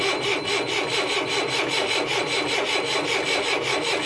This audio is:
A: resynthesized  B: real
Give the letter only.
B